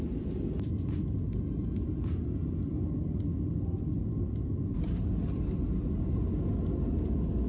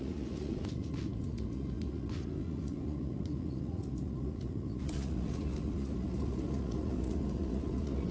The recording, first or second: first